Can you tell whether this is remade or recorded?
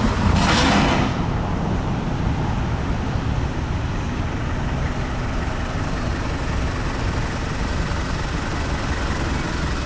recorded